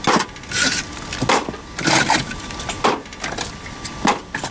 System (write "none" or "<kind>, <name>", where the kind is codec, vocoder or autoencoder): none